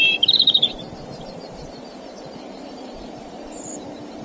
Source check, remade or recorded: remade